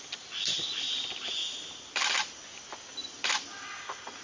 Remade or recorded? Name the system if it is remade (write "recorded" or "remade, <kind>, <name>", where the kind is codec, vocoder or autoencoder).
recorded